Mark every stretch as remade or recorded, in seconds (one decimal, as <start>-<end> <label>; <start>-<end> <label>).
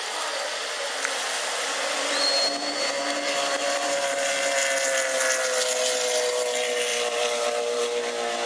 0.0-6.9 recorded; 6.9-7.8 remade; 7.8-8.5 recorded